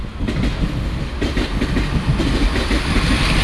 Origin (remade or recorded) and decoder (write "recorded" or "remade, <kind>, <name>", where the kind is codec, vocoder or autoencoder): recorded